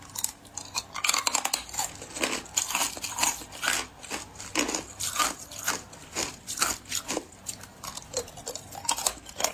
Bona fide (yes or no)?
yes